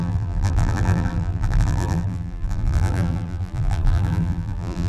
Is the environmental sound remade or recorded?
remade